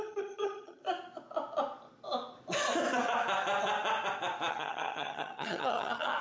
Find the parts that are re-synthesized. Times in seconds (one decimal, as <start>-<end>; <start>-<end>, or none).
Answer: 0.0-0.8; 4.5-6.2